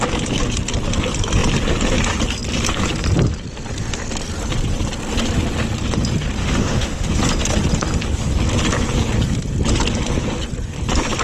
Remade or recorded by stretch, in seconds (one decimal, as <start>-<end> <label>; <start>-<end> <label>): 0.0-6.4 recorded; 6.4-7.2 remade; 7.2-11.2 recorded